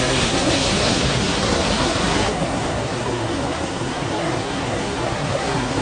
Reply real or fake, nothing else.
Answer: fake